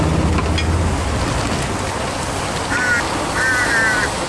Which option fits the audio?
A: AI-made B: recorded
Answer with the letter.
B